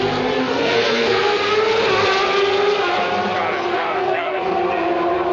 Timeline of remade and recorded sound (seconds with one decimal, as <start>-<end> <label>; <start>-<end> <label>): 0.0-0.4 recorded; 0.4-1.4 remade; 1.4-3.7 recorded; 3.7-4.6 remade; 4.6-5.3 recorded